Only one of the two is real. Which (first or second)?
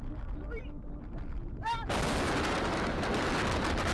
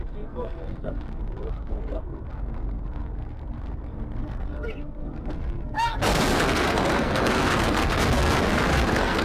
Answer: first